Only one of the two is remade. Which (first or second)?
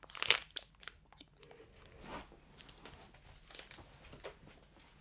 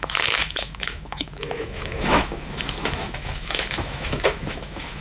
second